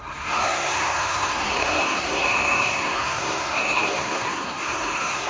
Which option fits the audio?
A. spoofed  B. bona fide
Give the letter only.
A